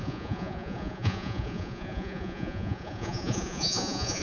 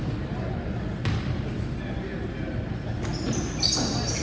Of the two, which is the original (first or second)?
second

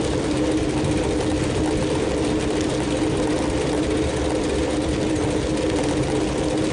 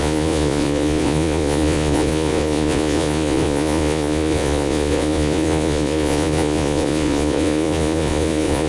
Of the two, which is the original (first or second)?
first